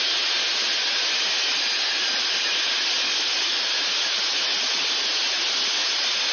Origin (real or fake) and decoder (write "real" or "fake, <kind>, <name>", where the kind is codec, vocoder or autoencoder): real